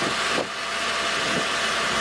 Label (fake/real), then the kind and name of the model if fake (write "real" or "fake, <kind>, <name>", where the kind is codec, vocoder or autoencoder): real